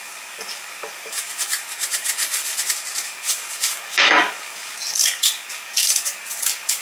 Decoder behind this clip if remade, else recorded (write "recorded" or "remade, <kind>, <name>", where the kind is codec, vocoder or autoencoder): remade, codec, DAC